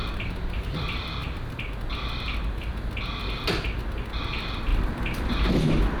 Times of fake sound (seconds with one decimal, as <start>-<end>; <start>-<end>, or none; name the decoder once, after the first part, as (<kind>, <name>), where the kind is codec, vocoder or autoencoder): 4.7-5.5 (vocoder, BigVGAN v2)